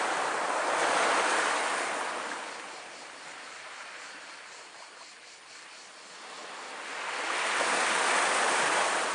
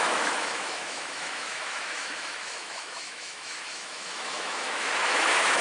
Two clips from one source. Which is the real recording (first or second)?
first